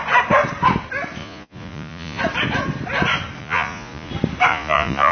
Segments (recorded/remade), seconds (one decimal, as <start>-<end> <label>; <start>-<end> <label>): 0.0-1.2 recorded; 1.2-2.2 remade; 2.2-3.4 recorded; 3.4-4.1 remade; 4.1-4.5 recorded; 4.5-5.1 remade